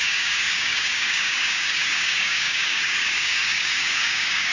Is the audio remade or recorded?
remade